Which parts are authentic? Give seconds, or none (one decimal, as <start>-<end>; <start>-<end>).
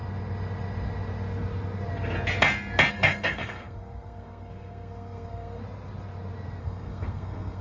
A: 0.0-2.9; 5.6-6.6